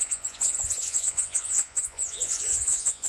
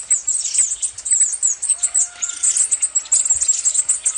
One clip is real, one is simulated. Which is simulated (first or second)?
first